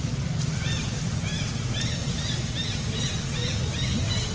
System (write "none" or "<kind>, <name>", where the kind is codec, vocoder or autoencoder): none